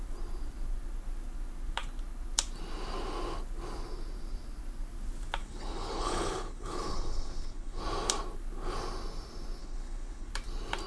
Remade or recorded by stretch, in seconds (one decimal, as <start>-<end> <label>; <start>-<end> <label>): 0.0-5.4 recorded; 5.4-7.8 remade; 7.8-9.6 recorded; 9.6-10.3 remade; 10.3-10.9 recorded